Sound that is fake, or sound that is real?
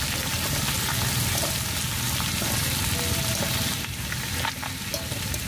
real